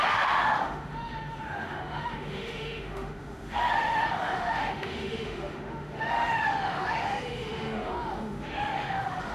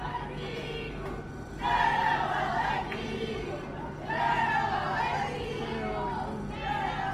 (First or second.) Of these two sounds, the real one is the second